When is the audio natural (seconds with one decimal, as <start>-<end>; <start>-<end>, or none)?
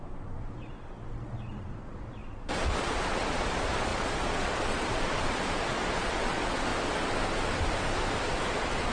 6.7-8.3